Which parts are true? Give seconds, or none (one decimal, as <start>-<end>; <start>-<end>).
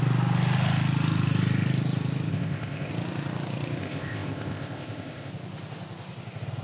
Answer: 0.0-2.3; 2.9-3.8; 5.3-6.6